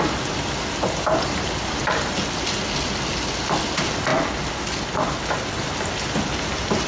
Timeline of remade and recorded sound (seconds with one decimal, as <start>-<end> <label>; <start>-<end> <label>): 0.0-6.9 recorded